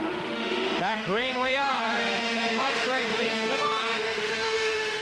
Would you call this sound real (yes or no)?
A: no